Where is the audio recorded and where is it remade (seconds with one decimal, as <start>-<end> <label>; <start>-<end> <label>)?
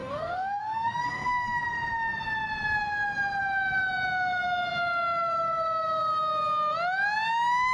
0.0-1.6 remade; 1.6-7.7 recorded